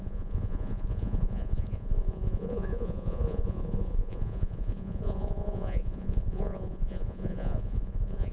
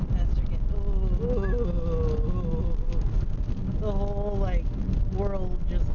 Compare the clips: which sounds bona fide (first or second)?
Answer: second